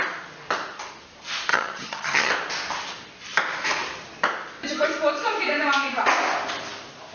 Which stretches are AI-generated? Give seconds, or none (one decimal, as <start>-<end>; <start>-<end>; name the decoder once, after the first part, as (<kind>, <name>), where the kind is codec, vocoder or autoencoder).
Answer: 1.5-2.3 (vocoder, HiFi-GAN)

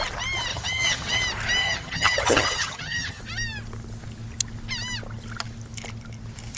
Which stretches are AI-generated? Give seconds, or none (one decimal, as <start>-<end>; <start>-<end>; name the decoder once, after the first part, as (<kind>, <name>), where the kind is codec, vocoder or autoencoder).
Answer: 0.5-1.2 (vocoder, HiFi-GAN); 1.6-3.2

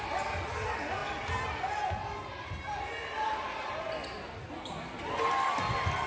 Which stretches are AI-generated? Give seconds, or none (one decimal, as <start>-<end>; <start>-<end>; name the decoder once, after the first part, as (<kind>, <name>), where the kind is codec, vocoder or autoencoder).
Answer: none

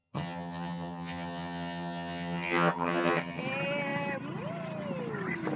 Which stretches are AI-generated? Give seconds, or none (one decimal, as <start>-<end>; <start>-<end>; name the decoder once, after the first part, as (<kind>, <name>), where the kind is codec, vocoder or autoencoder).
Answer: 0.0-3.4 (vocoder, HiFi-GAN)

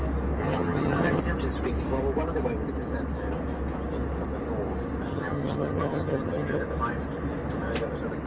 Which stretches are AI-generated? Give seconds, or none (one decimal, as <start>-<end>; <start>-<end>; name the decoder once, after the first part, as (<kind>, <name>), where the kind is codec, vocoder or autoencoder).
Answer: 0.4-1.2 (vocoder, HiFi-GAN); 5.1-6.6